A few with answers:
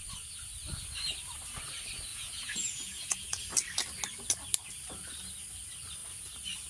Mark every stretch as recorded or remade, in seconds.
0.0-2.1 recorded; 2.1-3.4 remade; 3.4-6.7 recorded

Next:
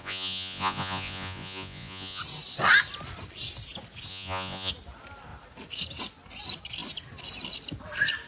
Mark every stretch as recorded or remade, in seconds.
0.0-2.2 remade; 2.2-4.1 recorded; 4.1-4.7 remade; 4.7-8.3 recorded

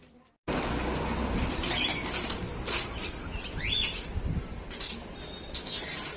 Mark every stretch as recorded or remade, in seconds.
0.0-6.2 recorded

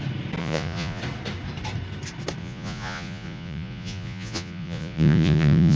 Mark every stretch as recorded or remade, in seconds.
0.0-0.4 recorded; 0.4-1.0 remade; 1.0-2.4 recorded; 2.4-5.8 remade